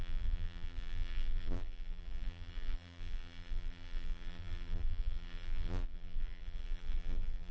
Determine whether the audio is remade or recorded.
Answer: remade